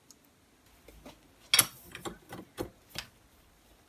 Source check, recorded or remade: recorded